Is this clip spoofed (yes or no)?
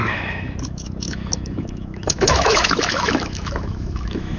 yes